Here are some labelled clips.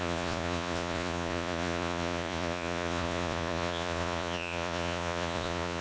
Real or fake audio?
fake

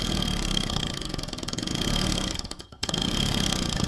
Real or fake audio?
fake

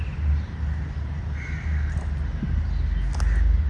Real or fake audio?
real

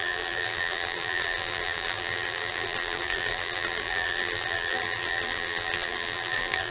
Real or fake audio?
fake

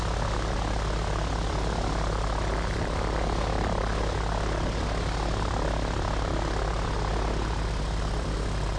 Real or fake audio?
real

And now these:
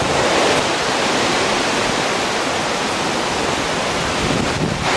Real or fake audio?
real